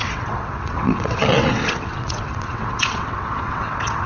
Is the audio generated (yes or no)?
yes